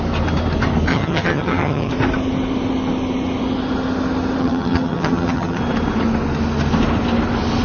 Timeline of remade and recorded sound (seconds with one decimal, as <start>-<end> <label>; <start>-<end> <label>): 0.0-0.9 recorded; 0.9-1.9 remade; 1.9-4.4 recorded; 4.4-5.6 remade; 5.6-7.6 recorded